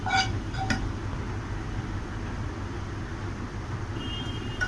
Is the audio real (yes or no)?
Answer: no